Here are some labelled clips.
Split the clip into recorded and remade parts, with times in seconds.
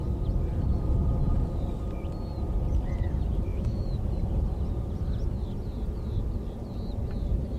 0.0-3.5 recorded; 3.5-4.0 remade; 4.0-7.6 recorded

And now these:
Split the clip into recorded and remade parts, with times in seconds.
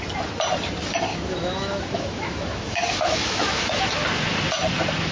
0.0-1.1 recorded; 1.1-3.8 remade; 3.8-5.1 recorded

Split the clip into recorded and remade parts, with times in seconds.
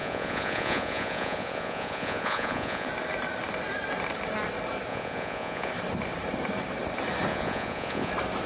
0.0-2.9 remade; 2.9-4.9 recorded; 4.9-5.7 remade; 5.7-7.3 recorded; 7.3-8.1 remade; 8.1-8.5 recorded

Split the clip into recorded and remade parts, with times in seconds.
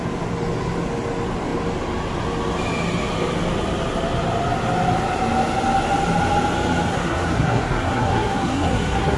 0.0-6.9 recorded; 6.9-9.2 remade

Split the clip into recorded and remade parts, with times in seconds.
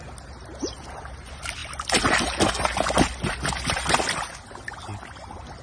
0.0-5.6 recorded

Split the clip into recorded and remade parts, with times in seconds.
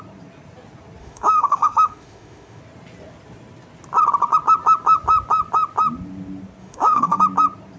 0.0-1.0 recorded; 1.0-2.6 remade; 2.6-6.6 recorded; 6.6-7.2 remade; 7.2-7.8 recorded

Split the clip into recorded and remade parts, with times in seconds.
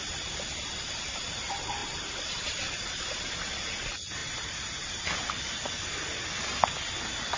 0.0-1.8 recorded; 1.8-3.0 remade; 3.0-4.2 recorded; 4.2-5.0 remade; 5.0-7.4 recorded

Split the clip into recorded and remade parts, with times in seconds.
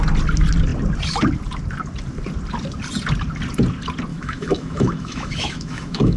0.0-4.1 recorded; 4.1-6.2 remade